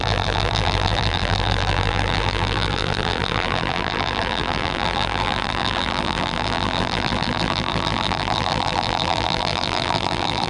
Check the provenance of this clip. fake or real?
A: fake